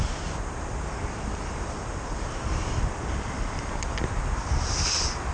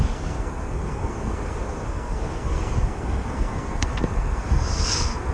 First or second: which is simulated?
second